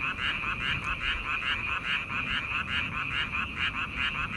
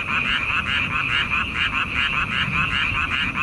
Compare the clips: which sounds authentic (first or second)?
first